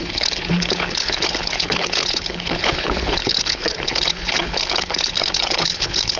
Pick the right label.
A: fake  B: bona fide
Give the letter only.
A